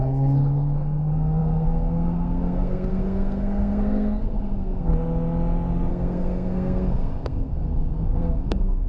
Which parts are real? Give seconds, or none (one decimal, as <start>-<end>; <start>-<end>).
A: 4.9-5.9